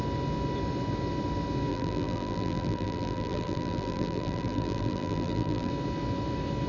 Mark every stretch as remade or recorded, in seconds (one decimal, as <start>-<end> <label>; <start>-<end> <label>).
0.0-1.7 recorded; 1.7-5.7 remade; 5.7-6.7 recorded